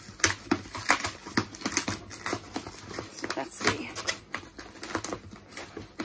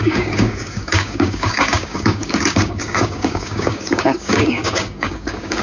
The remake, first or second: second